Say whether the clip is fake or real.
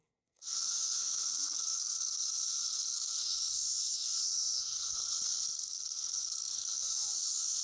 fake